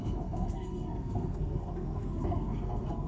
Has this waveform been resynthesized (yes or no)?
yes